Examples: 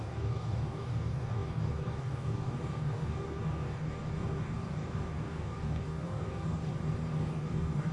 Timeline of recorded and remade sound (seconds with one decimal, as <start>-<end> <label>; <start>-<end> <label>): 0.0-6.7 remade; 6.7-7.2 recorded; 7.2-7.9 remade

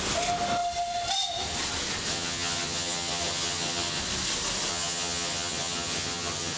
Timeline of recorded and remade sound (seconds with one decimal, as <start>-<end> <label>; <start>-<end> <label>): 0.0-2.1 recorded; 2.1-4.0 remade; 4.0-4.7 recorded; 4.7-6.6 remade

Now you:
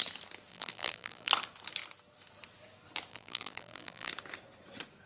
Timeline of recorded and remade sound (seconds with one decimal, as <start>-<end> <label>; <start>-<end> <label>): 0.0-0.5 recorded; 0.5-1.3 remade; 1.3-3.1 recorded; 3.1-4.1 remade; 4.1-5.1 recorded

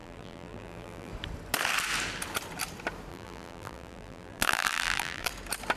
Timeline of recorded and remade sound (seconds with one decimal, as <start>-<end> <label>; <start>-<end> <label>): 0.0-1.1 remade; 1.1-3.1 recorded; 3.1-5.3 remade; 5.3-5.8 recorded

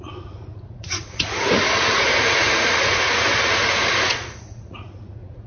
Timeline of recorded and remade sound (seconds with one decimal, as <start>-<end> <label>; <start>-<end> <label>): 0.0-5.5 remade